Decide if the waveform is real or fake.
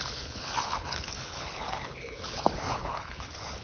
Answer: fake